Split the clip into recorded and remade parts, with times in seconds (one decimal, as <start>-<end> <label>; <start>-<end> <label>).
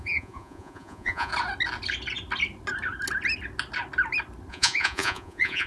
0.0-1.3 remade; 1.3-4.5 recorded; 4.5-5.7 remade